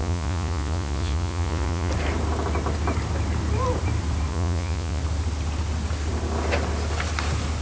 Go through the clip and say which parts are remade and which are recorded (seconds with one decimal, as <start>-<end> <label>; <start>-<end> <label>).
0.0-1.9 remade; 1.9-4.3 recorded; 4.3-5.0 remade; 5.0-7.6 recorded